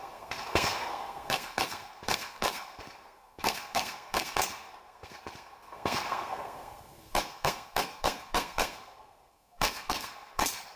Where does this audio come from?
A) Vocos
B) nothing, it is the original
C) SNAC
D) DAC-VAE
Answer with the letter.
C